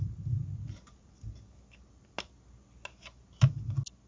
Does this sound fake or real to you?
real